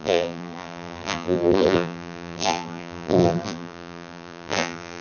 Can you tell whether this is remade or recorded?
remade